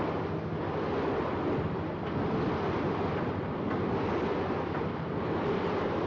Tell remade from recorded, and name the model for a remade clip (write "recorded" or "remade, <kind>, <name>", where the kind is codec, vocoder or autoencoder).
recorded